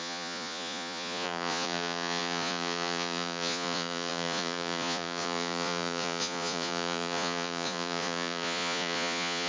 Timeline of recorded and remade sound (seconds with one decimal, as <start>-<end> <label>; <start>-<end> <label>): 0.0-9.5 remade